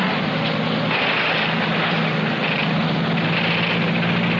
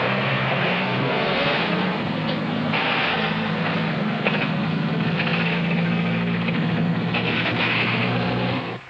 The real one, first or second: first